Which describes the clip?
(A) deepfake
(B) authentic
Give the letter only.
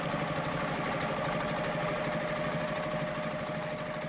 B